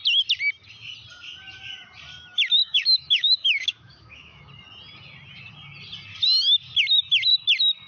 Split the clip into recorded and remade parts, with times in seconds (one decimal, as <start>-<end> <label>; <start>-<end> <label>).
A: 0.0-2.6 recorded; 2.6-4.4 remade; 4.4-7.9 recorded